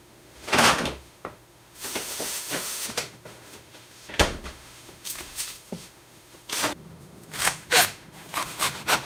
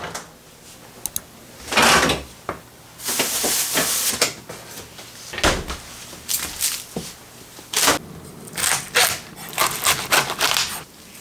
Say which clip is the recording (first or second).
second